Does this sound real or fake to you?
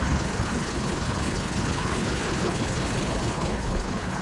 fake